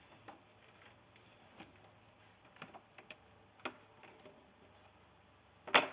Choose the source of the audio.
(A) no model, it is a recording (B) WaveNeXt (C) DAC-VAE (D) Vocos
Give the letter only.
A